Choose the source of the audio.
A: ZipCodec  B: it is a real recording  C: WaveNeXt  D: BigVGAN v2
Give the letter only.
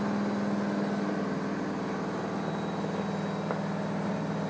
B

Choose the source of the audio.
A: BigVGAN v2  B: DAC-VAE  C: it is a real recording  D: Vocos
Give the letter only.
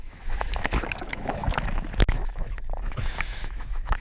B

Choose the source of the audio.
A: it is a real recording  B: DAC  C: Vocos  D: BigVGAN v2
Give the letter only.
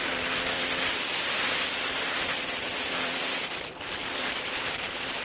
D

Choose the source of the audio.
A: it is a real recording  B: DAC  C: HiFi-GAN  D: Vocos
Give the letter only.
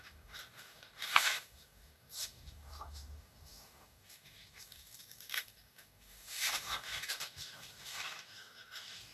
B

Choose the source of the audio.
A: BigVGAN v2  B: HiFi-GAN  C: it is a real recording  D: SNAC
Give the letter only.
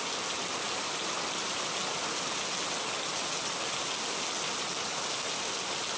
C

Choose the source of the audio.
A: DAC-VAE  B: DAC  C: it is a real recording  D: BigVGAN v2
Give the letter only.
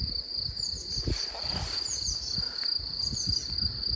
C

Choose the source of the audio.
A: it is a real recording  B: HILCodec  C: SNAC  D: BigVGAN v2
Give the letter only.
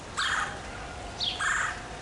A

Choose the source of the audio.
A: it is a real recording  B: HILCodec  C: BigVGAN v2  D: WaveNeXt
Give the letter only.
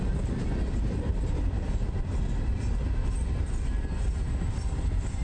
A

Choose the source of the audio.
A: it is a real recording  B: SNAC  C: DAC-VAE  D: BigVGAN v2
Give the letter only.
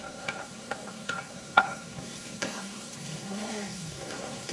B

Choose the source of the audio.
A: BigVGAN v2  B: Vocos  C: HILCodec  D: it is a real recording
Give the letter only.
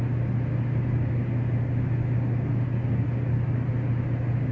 D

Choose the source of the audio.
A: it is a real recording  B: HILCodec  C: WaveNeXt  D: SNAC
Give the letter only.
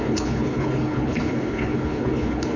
B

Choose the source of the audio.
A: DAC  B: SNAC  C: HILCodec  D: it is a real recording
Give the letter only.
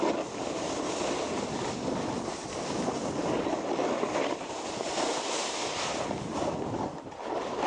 D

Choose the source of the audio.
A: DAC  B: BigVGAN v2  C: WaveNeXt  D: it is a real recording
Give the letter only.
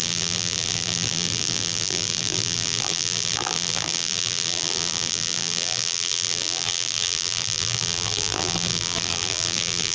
B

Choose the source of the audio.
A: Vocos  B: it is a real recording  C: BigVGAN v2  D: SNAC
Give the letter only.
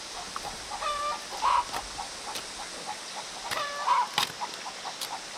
B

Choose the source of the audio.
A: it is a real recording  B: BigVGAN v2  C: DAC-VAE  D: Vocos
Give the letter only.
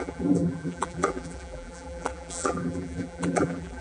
B